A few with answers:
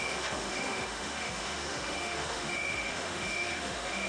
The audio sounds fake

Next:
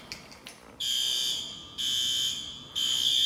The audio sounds real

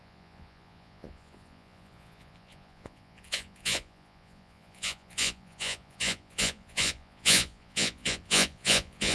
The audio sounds fake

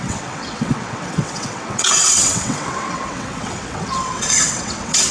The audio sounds fake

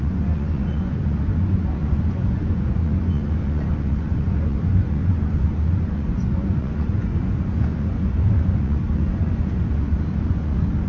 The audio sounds fake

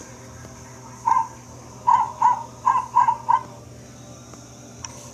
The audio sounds real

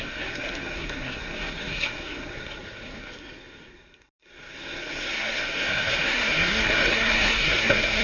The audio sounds fake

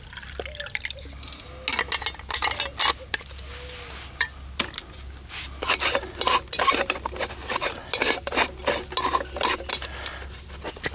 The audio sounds real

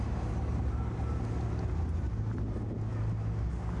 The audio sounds real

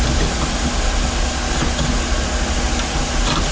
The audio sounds real